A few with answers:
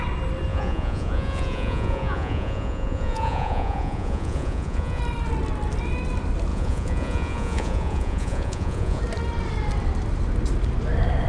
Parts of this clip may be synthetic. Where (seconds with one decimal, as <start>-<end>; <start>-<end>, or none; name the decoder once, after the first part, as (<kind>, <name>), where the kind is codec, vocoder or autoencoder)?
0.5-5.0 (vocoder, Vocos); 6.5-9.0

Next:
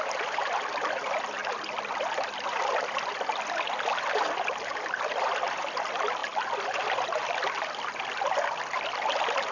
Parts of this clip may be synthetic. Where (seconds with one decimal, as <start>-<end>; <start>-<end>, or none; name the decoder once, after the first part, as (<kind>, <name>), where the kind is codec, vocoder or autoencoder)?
none

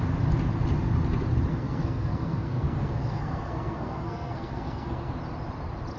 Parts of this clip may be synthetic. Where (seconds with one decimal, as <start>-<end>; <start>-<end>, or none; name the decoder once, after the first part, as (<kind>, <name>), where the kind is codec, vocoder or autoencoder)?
1.5-5.1 (codec, SNAC)

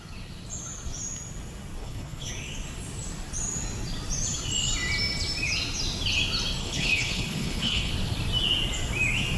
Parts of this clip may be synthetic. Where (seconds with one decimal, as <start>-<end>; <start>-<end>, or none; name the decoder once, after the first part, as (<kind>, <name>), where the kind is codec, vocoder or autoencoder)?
1.8-2.3 (codec, HILCodec); 6.6-7.9

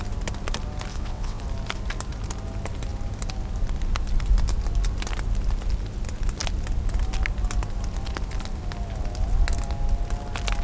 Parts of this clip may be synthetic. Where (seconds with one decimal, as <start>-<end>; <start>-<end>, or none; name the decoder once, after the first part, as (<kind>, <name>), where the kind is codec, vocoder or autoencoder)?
0.9-1.4 (vocoder, WaveNeXt)

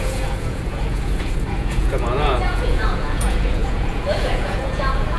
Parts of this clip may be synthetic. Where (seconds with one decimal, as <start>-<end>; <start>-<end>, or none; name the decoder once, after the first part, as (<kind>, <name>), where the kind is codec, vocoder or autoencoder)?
0.0-5.2 (vocoder, Vocos)

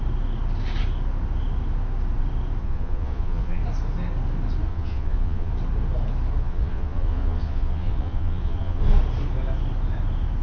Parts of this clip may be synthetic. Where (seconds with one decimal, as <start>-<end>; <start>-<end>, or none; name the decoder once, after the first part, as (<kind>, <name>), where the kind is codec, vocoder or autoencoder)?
2.6-3.6 (vocoder, Vocos); 4.7-5.5; 6.4-8.8

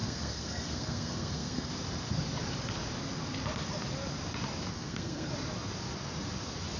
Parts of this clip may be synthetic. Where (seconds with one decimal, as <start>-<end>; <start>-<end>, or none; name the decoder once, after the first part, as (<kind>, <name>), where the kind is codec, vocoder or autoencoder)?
0.0-1.7 (codec, SNAC); 4.7-5.3